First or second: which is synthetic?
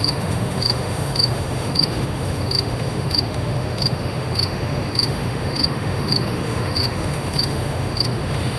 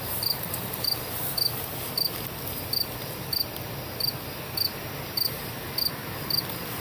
first